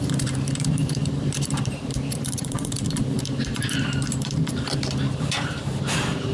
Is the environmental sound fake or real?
fake